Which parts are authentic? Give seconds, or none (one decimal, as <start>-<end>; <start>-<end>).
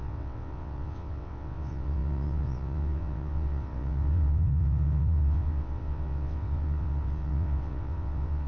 none